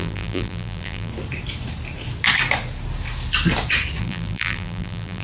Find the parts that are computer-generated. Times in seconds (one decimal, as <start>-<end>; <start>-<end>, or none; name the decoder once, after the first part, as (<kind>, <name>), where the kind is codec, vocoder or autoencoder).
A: 0.0-1.1 (vocoder, BigVGAN v2); 4.0-5.2